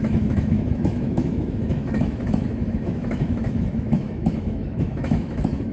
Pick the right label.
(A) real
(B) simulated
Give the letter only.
B